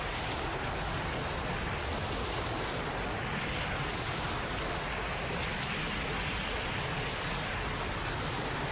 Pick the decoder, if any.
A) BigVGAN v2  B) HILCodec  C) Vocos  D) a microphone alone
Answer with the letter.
D